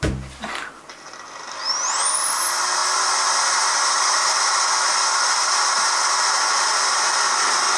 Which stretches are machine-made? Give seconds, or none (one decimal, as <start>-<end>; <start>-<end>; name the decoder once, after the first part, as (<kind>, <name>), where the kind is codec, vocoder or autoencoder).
none